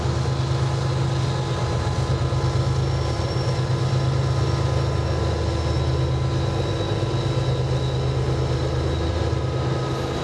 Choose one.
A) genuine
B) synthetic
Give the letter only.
A